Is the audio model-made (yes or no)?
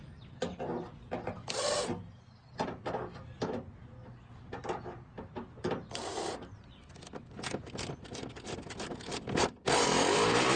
no